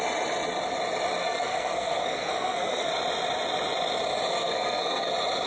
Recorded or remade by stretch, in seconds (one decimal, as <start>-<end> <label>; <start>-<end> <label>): 0.0-1.2 recorded; 1.2-2.9 remade; 2.9-4.3 recorded; 4.3-5.1 remade; 5.1-5.5 recorded